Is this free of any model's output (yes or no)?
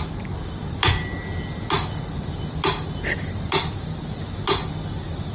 yes